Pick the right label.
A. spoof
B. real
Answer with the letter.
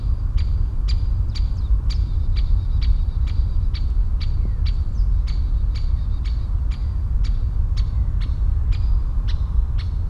B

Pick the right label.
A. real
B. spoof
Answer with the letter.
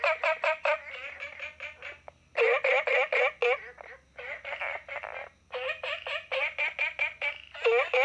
A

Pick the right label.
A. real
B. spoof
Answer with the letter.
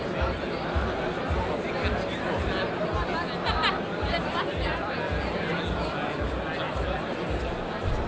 A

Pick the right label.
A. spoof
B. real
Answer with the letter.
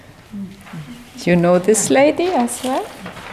B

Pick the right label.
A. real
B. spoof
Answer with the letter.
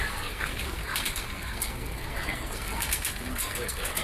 B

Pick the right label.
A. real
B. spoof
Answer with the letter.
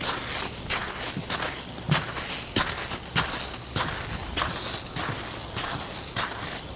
A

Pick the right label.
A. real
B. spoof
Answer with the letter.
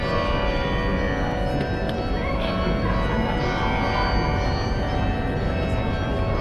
A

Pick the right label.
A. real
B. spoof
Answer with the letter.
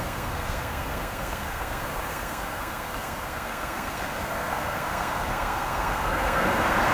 B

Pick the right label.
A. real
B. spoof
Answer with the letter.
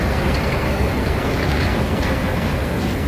B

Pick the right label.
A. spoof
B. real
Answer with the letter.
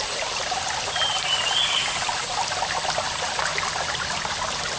B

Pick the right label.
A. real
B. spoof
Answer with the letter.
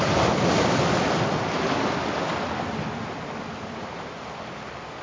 A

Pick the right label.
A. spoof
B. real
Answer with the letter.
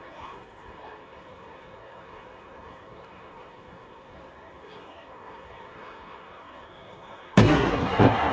A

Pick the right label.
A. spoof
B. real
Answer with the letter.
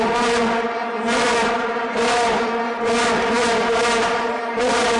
B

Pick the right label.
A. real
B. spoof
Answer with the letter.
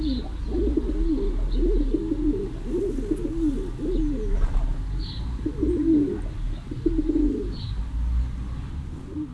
A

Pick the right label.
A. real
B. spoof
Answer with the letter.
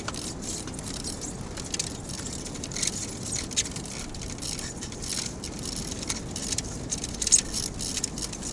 A